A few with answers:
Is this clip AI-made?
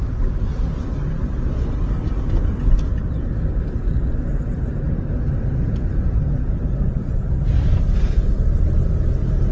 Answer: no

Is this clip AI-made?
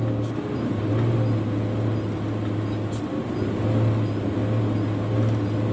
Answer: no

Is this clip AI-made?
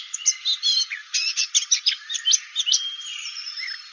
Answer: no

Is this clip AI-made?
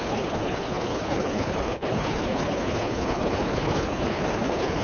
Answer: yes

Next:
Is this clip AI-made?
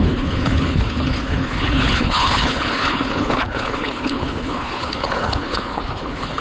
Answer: yes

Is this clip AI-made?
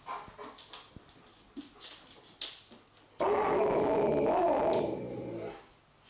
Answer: no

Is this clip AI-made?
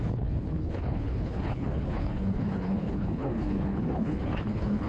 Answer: yes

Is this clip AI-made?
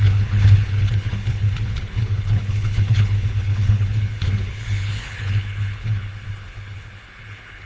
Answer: yes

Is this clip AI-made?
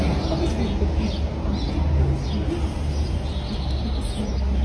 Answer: no